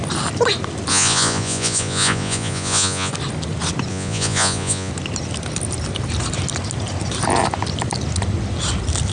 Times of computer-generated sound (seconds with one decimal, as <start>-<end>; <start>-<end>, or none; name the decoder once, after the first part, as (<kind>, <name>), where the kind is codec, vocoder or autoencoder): 0.9-3.1 (vocoder, Vocos); 3.9-4.9